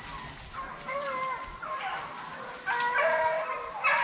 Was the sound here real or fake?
real